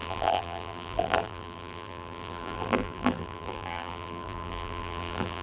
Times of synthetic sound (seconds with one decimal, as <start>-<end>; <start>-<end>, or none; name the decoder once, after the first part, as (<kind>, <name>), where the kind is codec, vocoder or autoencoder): 0.0-5.4 (vocoder, BigVGAN v2)

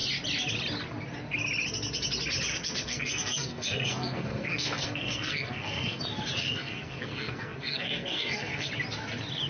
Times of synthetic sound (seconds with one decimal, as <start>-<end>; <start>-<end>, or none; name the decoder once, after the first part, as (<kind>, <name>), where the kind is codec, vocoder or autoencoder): 2.5-6.0 (codec, SNAC); 6.4-8.7